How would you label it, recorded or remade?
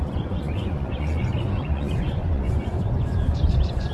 remade